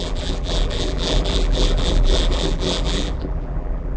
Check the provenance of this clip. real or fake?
fake